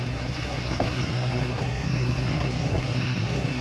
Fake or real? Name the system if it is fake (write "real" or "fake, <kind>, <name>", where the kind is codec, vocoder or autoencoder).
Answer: fake, codec, SNAC